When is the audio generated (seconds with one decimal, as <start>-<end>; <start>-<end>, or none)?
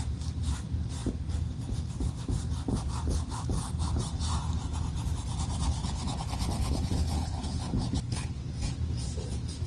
5.8-8.4